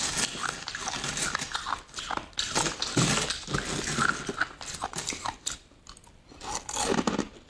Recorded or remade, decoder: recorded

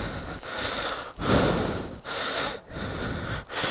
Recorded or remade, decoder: recorded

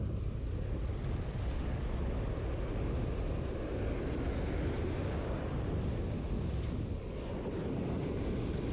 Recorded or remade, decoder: recorded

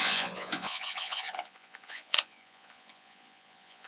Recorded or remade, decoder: remade, vocoder, Vocos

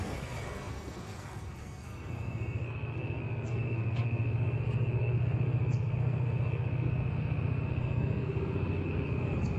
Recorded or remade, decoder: remade, codec, SNAC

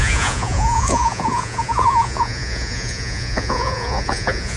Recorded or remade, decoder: remade, vocoder, Vocos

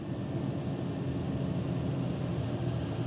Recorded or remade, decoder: recorded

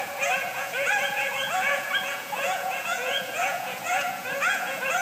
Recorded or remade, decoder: remade, vocoder, Vocos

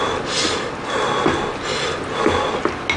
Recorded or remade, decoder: recorded